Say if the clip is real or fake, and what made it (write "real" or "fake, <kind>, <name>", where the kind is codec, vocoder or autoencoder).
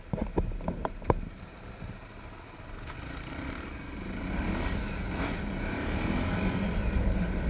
real